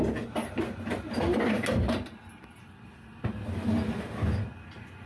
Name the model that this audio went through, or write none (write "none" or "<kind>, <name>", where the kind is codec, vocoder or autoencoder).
none